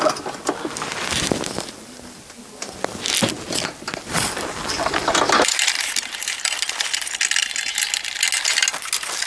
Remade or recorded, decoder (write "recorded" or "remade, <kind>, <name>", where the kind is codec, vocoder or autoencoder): recorded